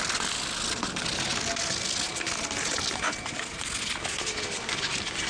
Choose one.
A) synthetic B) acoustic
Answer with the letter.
B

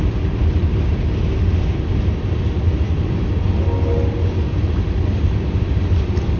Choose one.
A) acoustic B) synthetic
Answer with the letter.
A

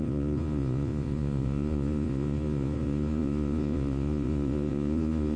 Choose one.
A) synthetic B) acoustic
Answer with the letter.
A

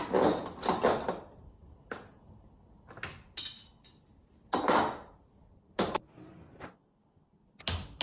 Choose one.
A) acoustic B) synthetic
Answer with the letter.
A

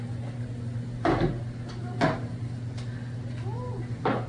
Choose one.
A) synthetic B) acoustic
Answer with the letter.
B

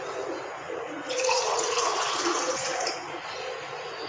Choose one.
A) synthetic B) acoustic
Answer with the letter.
A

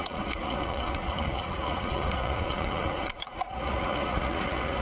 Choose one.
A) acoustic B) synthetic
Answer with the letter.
B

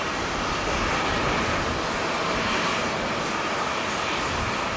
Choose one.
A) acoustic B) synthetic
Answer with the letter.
A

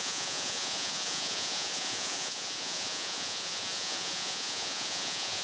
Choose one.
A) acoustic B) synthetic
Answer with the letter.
B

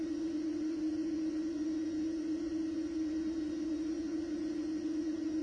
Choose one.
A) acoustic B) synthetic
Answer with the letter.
B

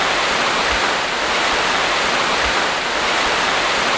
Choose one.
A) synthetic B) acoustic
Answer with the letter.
B